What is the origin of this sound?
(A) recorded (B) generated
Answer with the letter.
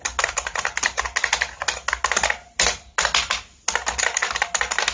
A